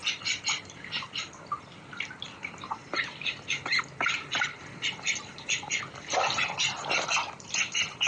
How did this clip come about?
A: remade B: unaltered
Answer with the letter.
A